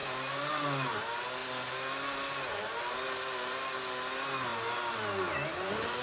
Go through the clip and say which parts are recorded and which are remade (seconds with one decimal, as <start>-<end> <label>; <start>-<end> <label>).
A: 0.0-6.0 recorded

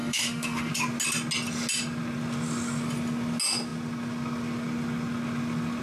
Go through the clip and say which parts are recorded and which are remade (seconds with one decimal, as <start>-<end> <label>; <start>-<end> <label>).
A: 0.0-0.7 remade; 0.7-5.8 recorded

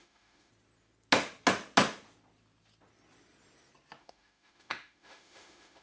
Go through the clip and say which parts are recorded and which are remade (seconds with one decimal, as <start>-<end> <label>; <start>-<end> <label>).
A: 0.0-0.5 remade; 0.5-4.0 recorded; 4.0-5.8 remade

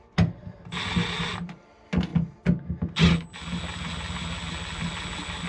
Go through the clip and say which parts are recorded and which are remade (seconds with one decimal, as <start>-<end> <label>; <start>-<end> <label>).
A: 0.0-5.5 recorded

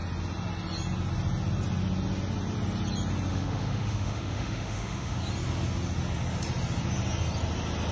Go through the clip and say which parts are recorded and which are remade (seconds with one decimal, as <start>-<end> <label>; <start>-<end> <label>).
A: 0.0-3.3 recorded; 3.3-5.2 remade; 5.2-7.9 recorded